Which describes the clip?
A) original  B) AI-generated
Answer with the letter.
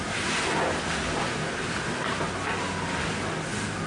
A